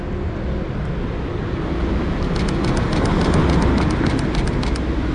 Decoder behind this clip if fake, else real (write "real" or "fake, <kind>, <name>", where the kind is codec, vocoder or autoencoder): real